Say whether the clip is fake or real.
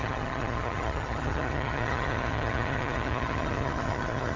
fake